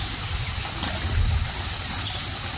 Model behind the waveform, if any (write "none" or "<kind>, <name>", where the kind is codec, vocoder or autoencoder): none